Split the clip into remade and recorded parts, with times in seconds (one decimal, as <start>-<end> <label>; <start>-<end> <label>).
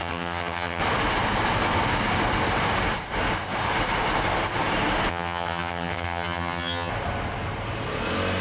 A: 0.0-0.8 remade; 0.8-5.1 recorded; 5.1-6.9 remade; 6.9-8.4 recorded